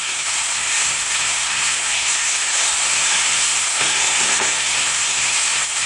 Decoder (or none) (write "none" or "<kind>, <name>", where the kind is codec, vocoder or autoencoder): codec, SNAC